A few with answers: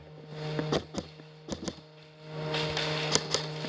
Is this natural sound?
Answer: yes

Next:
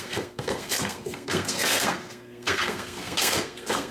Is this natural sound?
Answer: no